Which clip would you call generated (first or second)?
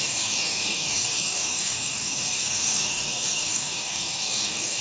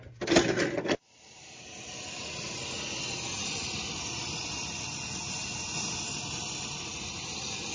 first